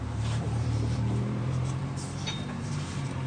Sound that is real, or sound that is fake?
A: fake